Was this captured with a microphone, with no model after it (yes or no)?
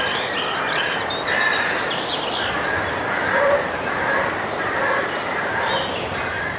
yes